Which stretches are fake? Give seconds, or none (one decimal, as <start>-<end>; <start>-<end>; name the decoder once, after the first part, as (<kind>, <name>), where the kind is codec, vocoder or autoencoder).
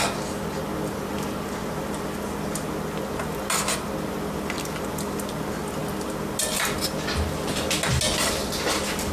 none